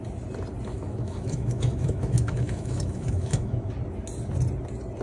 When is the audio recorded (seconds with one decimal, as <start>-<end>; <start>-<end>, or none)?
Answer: 0.0-0.7; 3.7-5.0